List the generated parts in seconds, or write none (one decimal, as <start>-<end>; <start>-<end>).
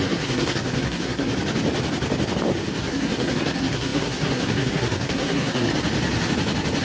0.0-1.3; 2.8-5.7